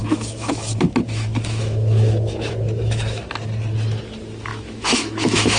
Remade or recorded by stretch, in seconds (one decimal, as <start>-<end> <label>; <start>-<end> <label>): 0.0-3.3 remade; 3.3-4.5 recorded; 4.5-5.6 remade